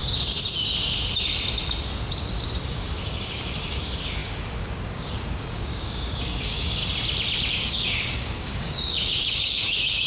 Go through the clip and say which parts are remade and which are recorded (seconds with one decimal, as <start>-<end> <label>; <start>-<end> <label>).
0.0-2.7 recorded; 2.7-6.8 remade; 6.8-7.5 recorded; 7.5-10.1 remade